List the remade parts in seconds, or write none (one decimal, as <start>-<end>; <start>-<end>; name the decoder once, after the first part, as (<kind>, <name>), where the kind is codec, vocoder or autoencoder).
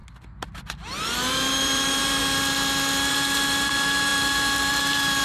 1.3-2.2 (vocoder, BigVGAN v2); 3.1-5.2